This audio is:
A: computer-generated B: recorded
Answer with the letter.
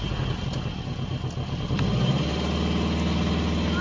B